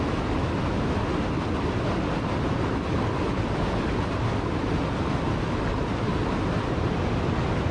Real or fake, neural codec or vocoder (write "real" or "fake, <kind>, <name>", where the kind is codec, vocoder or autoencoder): real